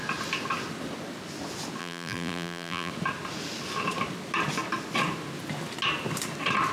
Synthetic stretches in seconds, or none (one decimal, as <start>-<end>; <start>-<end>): 1.8-2.9